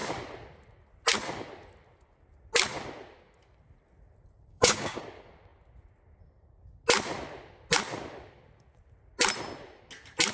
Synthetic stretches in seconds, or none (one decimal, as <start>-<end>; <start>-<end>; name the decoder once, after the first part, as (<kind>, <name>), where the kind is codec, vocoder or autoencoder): 4.5-5.0 (codec, DAC)